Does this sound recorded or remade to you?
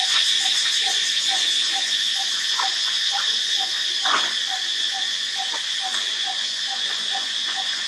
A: remade